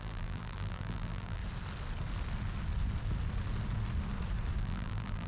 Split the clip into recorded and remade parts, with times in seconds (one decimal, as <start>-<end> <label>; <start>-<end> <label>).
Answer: 0.0-1.4 remade; 1.4-4.6 recorded; 4.6-5.3 remade